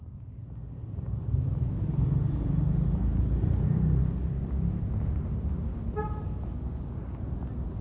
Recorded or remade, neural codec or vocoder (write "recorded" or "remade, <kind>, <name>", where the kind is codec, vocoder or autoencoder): recorded